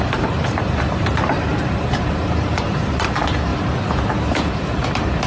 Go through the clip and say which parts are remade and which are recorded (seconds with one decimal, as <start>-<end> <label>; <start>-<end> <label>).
0.0-3.5 remade; 3.5-4.1 recorded; 4.1-5.3 remade